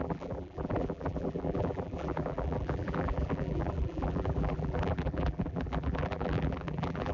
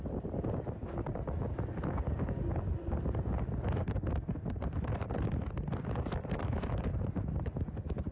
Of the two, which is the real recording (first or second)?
second